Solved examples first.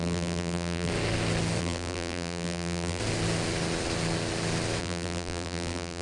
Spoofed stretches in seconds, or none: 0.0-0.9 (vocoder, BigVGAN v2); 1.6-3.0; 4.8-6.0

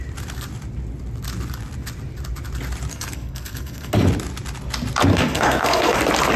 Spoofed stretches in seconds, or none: 2.9-3.9 (codec, SNAC); 5.1-6.0

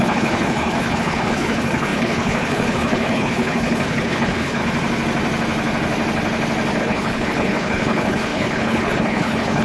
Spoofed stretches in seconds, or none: 0.0-4.6 (codec, HILCodec); 6.8-9.6

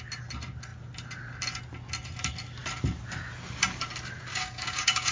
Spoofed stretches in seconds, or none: 4.3-5.1 (codec, DAC)

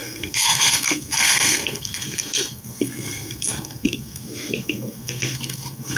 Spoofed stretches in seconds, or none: 0.0-6.0 (codec, SNAC)

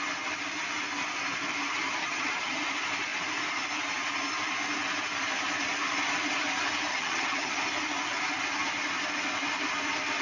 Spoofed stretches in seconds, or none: 2.0-2.6 (vocoder, HiFi-GAN); 6.9-7.5